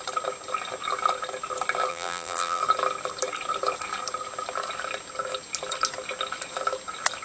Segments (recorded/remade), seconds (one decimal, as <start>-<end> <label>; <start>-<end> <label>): 0.0-1.9 recorded; 1.9-2.6 remade; 2.6-7.2 recorded